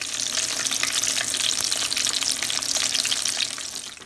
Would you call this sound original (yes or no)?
yes